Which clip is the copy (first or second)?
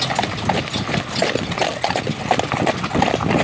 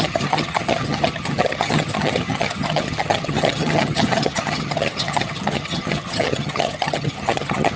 second